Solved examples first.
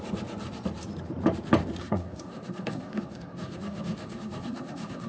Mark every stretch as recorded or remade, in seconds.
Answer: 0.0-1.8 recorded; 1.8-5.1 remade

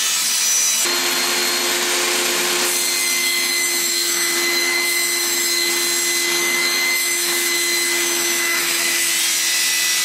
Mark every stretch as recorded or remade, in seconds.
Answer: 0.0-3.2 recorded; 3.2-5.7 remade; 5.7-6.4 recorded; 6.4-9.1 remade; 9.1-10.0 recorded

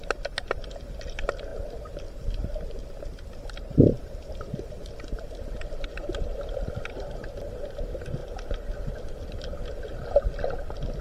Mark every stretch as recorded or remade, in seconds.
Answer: 0.0-1.5 recorded; 1.5-6.7 remade; 6.7-11.0 recorded

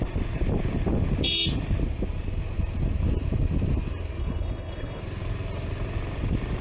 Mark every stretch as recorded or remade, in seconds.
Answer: 0.0-4.2 recorded; 4.2-5.0 remade; 5.0-6.6 recorded

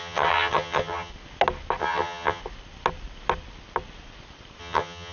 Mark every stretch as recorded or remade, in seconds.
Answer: 0.0-1.1 remade; 1.1-1.8 recorded; 1.8-2.4 remade; 2.4-4.6 recorded; 4.6-5.1 remade

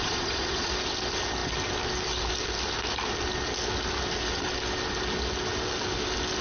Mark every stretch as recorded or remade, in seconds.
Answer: 0.0-0.7 remade; 0.7-6.4 recorded

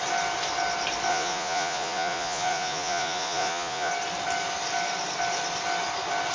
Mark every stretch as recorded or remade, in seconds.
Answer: 0.0-1.1 recorded; 1.1-3.9 remade; 3.9-6.3 recorded